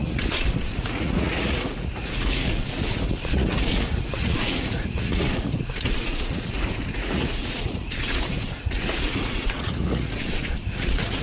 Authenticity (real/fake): fake